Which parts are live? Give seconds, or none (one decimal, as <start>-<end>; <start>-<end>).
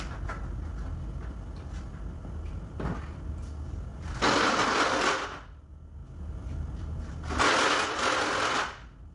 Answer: 0.0-9.1